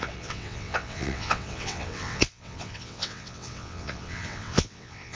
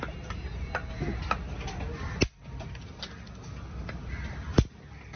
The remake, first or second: first